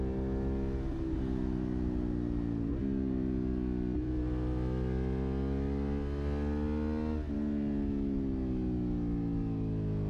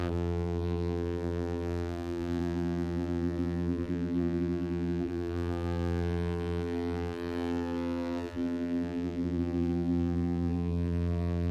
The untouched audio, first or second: first